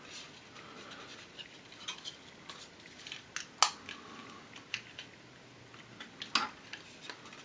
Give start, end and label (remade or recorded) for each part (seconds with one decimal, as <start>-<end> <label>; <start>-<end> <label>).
0.0-7.4 recorded